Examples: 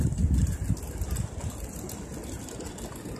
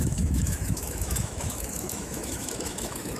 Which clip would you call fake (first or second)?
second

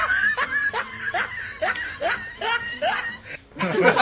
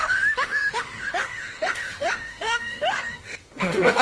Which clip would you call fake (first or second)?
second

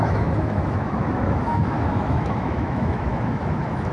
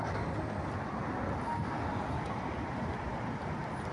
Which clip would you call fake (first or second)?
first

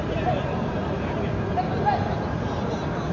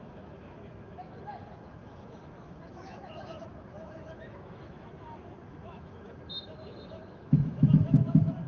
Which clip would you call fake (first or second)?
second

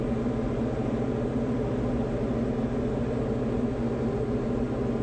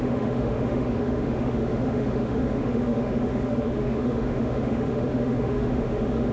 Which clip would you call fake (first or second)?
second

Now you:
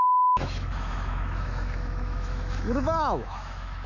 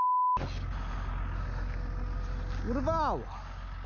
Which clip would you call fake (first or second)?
first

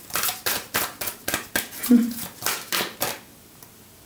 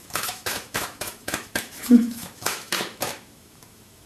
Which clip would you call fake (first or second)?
second